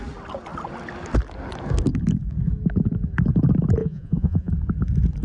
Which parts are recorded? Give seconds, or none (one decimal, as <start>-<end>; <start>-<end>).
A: 0.0-3.8; 4.5-5.2